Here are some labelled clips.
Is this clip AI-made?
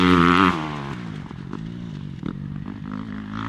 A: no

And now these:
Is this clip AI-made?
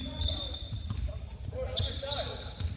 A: no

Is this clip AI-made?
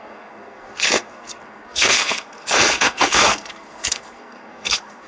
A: yes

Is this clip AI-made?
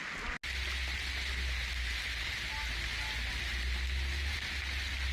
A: no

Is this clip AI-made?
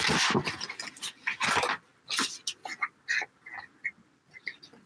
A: no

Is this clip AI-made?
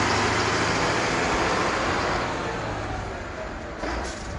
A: no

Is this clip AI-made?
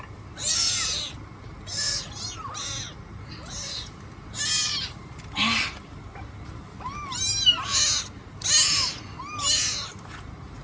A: no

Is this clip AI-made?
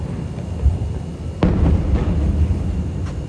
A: no